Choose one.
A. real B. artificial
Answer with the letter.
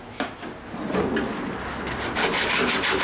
A